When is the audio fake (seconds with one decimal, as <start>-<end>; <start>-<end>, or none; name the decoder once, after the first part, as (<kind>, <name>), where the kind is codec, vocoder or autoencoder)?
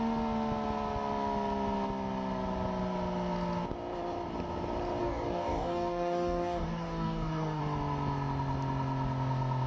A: 5.0-7.6 (codec, DAC)